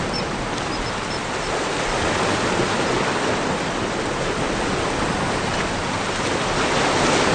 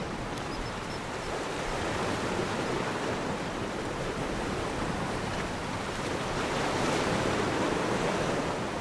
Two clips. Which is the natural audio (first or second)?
first